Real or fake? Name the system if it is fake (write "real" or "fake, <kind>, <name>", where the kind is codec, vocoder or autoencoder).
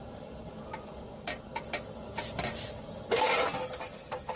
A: real